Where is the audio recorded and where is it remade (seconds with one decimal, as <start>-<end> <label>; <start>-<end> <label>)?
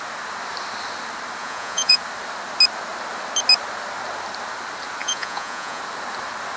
0.0-1.4 recorded; 1.4-2.0 remade; 2.0-5.0 recorded; 5.0-5.8 remade; 5.8-6.6 recorded